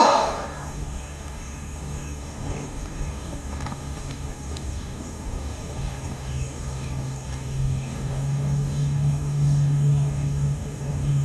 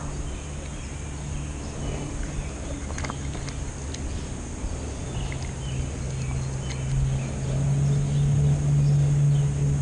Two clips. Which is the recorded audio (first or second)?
second